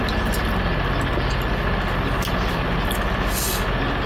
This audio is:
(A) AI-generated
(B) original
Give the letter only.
B